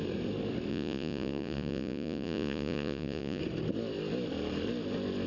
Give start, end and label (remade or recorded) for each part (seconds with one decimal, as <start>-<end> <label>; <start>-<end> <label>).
0.0-0.7 recorded; 0.7-3.4 remade; 3.4-5.3 recorded